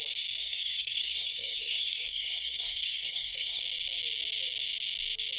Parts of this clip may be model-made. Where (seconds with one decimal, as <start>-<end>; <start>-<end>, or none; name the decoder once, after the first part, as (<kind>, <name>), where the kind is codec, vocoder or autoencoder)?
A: 0.4-3.6 (codec, SNAC)